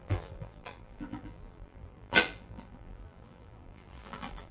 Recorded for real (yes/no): no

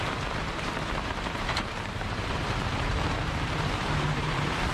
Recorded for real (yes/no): no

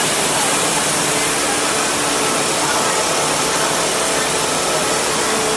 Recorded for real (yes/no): yes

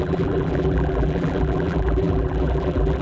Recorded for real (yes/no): no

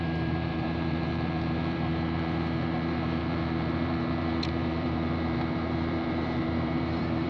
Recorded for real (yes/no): no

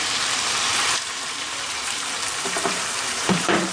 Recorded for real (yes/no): no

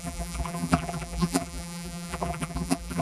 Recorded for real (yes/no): no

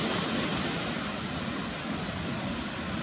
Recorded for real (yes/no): yes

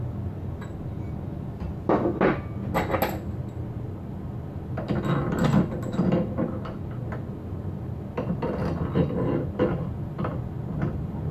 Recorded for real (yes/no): yes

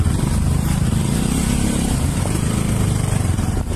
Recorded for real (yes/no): no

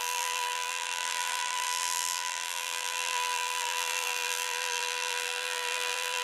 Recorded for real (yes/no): no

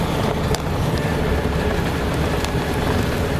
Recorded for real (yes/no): yes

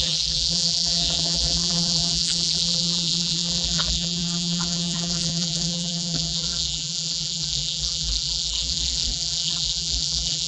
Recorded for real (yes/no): no